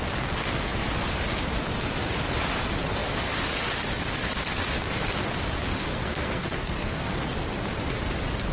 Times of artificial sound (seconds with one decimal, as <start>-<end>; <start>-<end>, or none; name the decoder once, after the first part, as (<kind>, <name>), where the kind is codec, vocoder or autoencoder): 5.9-7.2 (codec, SNAC)